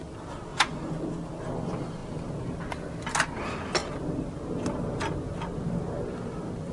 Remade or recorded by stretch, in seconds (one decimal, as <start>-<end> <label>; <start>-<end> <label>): 0.0-0.5 recorded; 0.5-1.0 remade; 1.0-6.7 recorded